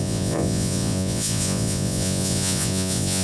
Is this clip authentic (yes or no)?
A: no